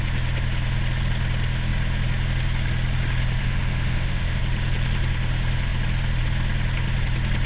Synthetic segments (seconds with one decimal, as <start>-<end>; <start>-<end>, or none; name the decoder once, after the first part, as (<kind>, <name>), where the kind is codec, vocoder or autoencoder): 3.4-4.4 (autoencoder, DAC-VAE)